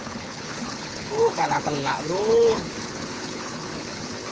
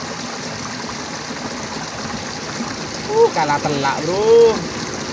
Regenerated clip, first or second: first